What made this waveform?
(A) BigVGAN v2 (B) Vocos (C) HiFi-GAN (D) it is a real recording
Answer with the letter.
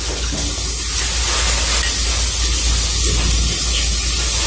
D